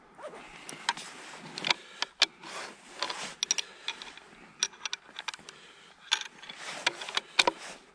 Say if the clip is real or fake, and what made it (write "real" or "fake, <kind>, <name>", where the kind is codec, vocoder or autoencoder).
real